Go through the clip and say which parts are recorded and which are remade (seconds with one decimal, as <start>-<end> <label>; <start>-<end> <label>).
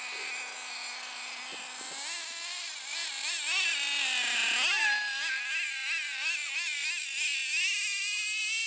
0.0-8.7 recorded